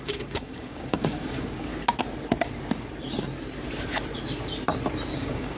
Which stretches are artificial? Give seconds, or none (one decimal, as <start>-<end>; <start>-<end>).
0.0-1.7; 5.1-5.6